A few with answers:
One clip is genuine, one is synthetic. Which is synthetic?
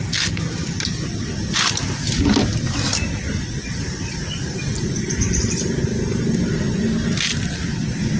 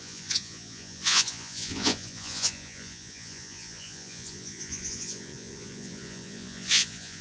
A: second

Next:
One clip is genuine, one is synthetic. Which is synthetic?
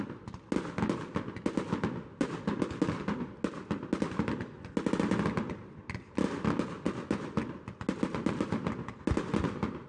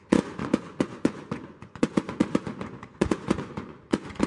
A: second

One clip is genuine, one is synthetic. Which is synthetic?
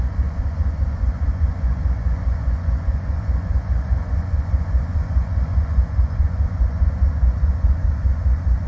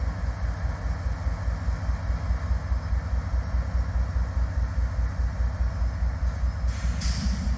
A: first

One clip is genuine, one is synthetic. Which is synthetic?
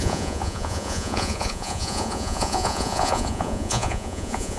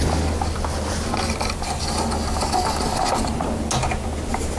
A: first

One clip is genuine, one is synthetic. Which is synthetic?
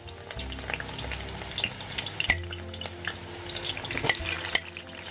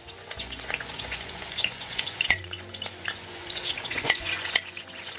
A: second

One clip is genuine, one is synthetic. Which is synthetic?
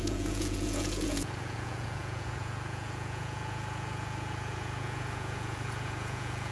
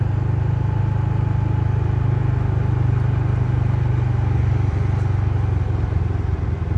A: first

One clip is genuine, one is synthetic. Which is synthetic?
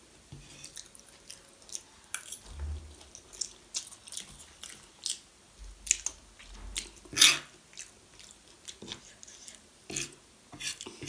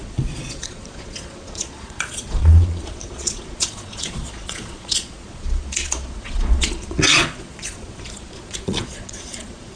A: second